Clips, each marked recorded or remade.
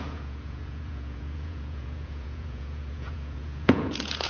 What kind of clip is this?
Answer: remade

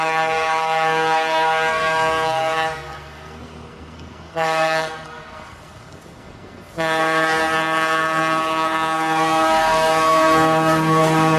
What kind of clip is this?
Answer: remade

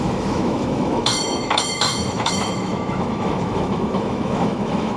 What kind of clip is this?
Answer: remade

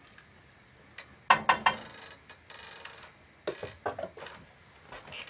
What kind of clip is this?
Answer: recorded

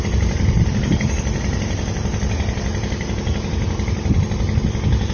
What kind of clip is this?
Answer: recorded